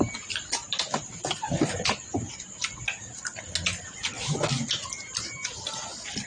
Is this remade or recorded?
recorded